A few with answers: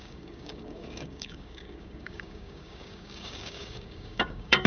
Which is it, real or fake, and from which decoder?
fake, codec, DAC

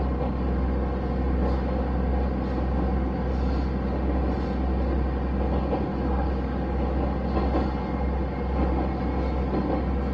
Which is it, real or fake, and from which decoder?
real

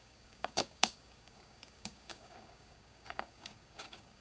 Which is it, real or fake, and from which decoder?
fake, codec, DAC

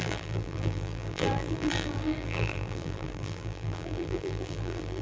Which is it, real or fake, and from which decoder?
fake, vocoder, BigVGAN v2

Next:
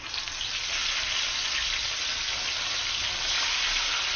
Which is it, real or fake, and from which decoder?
real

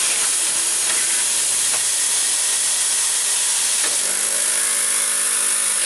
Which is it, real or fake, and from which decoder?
real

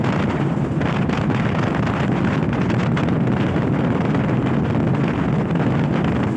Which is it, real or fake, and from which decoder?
real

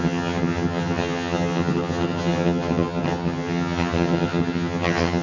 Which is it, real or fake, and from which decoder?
fake, vocoder, HiFi-GAN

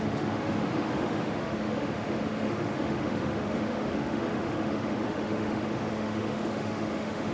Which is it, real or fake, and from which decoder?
fake, autoencoder, DAC-VAE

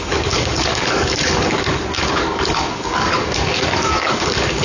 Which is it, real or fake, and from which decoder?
fake, codec, DAC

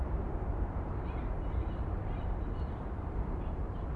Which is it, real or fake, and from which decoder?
fake, vocoder, BigVGAN v2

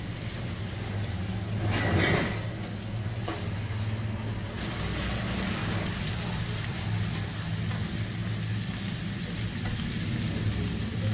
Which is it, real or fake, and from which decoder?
real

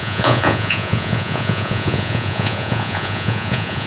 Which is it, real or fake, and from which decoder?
fake, vocoder, Vocos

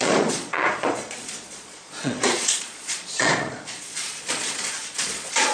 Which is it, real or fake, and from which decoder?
fake, vocoder, Vocos